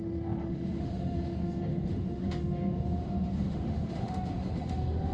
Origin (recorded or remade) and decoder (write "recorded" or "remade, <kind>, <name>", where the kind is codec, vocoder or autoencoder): remade, autoencoder, DAC-VAE